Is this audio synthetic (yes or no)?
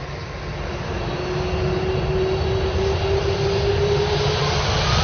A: no